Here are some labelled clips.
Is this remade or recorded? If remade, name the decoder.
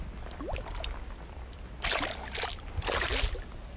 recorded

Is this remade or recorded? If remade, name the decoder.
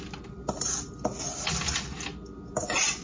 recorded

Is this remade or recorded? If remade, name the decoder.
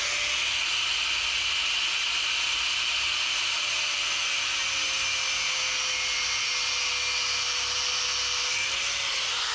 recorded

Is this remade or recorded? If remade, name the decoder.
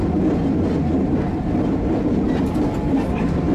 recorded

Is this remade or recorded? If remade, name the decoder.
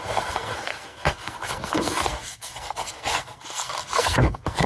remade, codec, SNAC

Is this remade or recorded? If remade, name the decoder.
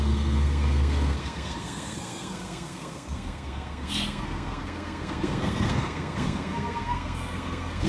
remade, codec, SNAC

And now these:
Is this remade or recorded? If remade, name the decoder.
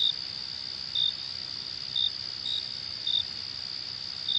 recorded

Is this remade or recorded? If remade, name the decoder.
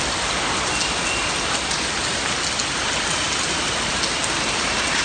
recorded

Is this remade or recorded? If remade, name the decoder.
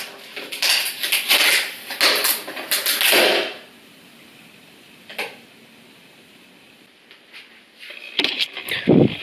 recorded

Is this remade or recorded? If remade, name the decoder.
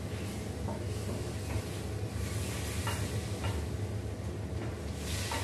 recorded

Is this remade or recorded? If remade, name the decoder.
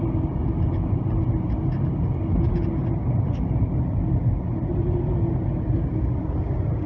recorded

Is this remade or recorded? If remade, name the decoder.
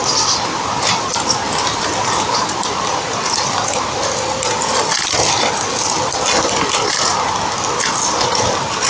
recorded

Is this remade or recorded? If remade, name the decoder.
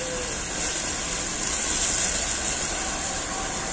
recorded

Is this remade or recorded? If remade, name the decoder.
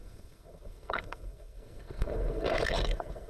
remade, codec, SNAC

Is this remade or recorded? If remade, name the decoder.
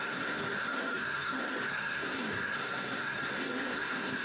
remade, codec, SNAC